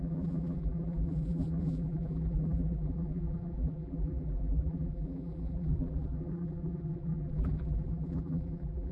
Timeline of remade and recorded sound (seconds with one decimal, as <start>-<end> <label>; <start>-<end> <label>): 0.0-8.9 remade